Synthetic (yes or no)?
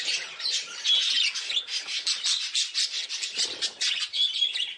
no